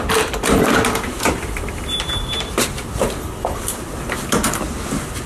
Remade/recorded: remade